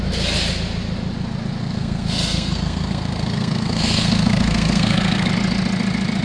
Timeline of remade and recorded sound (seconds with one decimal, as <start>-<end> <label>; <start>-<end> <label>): 0.0-1.6 recorded; 1.6-5.3 remade; 5.3-6.2 recorded